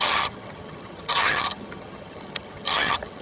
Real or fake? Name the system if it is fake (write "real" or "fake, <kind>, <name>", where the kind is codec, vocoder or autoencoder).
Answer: fake, vocoder, HiFi-GAN